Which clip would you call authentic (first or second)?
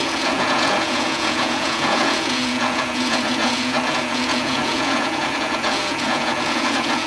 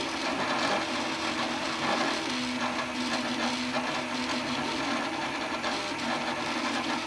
second